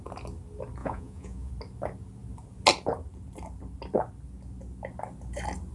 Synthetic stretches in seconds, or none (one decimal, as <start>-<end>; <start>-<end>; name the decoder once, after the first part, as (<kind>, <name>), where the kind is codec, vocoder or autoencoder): 0.8-1.5 (vocoder, Vocos)